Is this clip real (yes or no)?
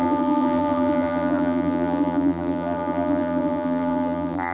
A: no